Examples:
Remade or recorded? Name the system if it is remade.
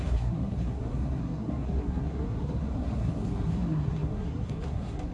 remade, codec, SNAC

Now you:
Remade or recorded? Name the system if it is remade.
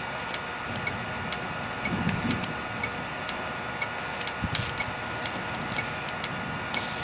recorded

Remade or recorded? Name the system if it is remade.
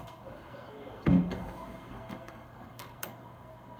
remade, codec, SNAC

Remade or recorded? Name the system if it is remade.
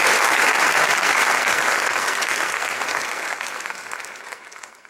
remade, codec, SNAC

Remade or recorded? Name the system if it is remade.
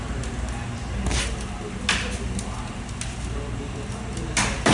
recorded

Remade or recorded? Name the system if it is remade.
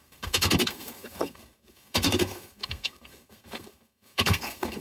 remade, codec, SNAC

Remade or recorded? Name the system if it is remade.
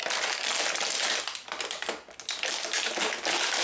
recorded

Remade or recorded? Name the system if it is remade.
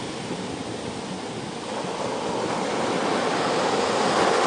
recorded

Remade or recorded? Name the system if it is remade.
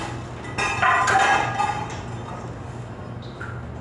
recorded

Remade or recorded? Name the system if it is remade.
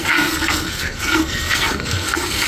remade, codec, SNAC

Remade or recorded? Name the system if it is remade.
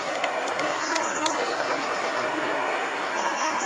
remade, codec, SNAC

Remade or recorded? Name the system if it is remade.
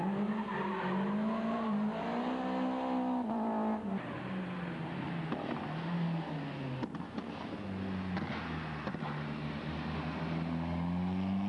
recorded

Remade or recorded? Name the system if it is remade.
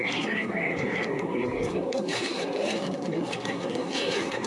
remade, codec, SNAC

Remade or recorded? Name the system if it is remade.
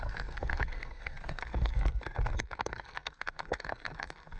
remade, codec, SNAC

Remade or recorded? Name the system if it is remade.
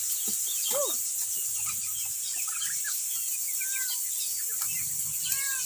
recorded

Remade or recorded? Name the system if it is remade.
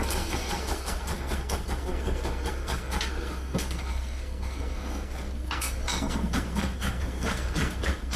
remade, codec, SNAC